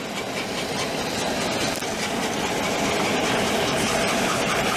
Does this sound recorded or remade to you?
recorded